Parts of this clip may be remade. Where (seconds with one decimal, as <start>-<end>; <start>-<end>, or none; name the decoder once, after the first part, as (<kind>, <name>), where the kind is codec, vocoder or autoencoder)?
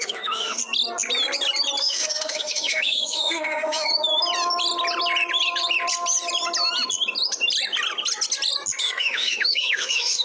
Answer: 0.0-0.6 (autoencoder, DAC-VAE); 1.8-3.9; 8.8-10.2